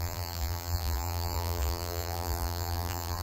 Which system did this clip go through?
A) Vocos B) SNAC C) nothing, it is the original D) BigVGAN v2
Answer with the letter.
D